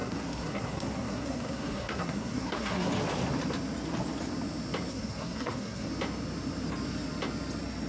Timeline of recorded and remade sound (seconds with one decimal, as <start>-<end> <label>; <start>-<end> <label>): 0.0-2.9 remade; 2.9-4.9 recorded; 4.9-5.9 remade; 5.9-7.9 recorded